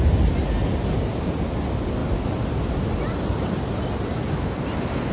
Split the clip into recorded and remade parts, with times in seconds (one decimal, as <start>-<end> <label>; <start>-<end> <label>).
0.0-5.1 recorded